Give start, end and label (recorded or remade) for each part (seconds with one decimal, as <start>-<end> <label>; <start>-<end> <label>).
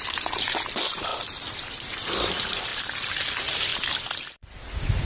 0.0-1.1 remade; 1.1-1.6 recorded; 1.6-3.7 remade; 3.7-5.1 recorded